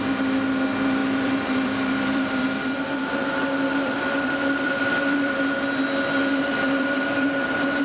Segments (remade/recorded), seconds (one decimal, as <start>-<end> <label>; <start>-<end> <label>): 0.0-1.0 recorded; 1.0-5.4 remade; 5.4-6.2 recorded; 6.2-7.8 remade